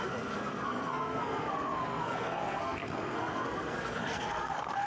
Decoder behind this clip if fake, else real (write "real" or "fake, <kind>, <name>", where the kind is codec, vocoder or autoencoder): fake, codec, SNAC